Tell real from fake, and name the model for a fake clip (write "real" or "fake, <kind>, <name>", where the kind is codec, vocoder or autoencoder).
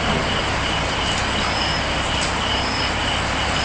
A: real